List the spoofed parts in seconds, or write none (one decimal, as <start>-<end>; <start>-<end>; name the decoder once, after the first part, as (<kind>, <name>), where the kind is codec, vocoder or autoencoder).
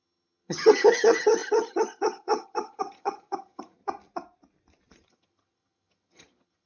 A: 0.0-3.8 (vocoder, HiFi-GAN); 5.1-6.7